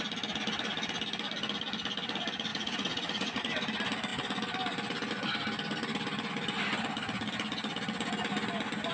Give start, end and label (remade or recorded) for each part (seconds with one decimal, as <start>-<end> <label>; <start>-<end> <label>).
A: 0.0-2.5 recorded; 2.5-3.4 remade; 3.4-8.9 recorded